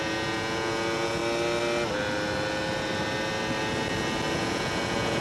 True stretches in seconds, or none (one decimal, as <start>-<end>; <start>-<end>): 1.2-4.3